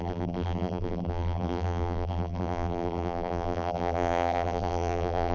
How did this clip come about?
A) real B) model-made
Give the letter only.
B